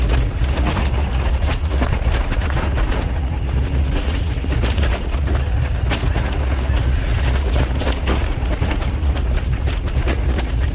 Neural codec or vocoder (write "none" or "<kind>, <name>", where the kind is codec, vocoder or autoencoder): vocoder, Vocos